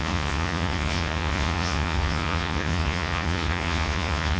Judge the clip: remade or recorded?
remade